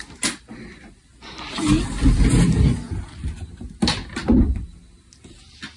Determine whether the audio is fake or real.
real